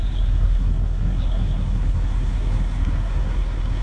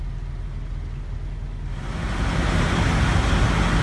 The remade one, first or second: first